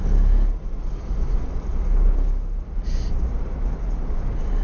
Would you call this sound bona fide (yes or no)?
yes